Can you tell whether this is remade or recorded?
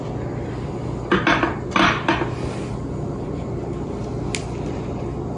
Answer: recorded